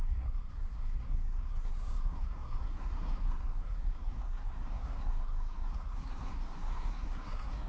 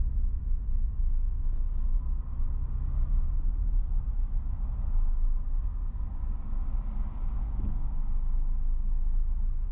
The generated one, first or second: first